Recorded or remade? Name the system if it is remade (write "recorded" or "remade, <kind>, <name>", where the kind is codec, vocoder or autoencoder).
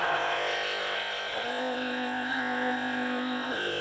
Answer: remade, codec, ZipCodec